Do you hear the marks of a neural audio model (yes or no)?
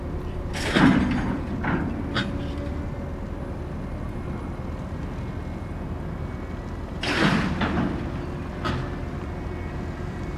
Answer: no